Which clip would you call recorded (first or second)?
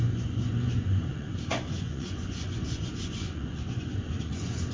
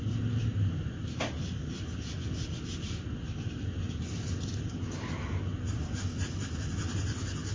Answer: second